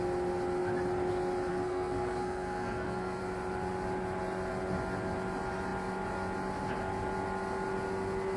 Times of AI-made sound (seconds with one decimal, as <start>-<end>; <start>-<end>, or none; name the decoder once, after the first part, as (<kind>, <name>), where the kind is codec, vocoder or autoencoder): 1.5-3.2 (codec, SNAC)